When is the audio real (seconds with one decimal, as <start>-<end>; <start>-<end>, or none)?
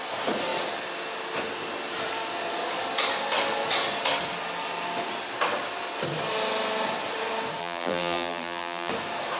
0.0-7.6; 8.9-9.4